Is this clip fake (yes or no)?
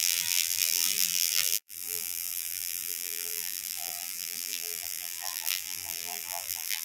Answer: yes